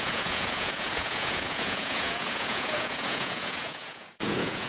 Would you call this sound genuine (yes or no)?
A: no